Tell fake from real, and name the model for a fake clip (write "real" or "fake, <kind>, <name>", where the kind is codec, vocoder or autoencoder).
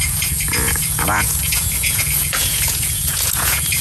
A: fake, vocoder, Vocos